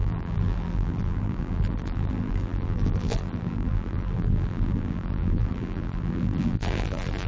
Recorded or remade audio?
remade